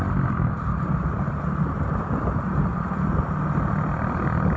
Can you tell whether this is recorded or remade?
recorded